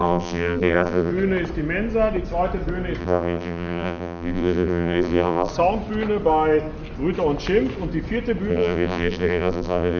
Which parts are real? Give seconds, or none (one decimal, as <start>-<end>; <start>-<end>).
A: 1.1-3.0; 5.5-8.5